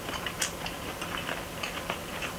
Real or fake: real